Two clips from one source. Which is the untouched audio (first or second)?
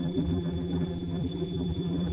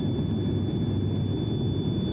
second